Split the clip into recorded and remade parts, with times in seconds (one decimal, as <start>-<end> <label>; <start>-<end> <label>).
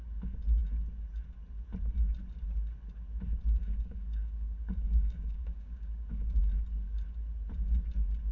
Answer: 0.0-3.6 recorded; 3.6-6.4 remade; 6.4-8.3 recorded